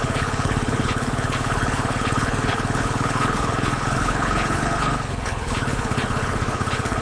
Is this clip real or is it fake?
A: fake